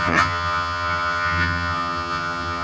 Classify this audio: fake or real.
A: fake